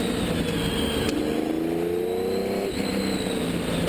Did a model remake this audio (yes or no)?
no